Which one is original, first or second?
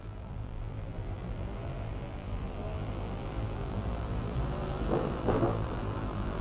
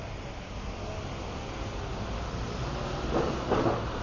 second